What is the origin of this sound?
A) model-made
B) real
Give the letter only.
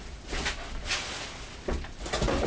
B